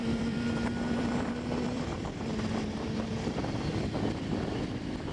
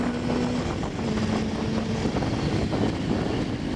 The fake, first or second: first